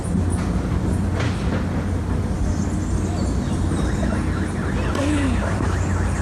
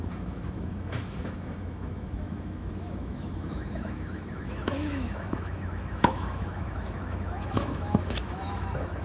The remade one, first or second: second